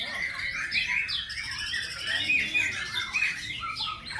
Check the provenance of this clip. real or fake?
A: real